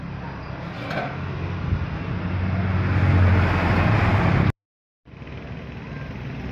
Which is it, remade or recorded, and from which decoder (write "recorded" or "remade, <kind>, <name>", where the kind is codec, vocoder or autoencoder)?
recorded